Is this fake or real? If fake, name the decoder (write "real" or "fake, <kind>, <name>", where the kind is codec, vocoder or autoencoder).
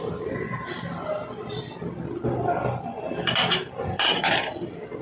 fake, vocoder, BigVGAN v2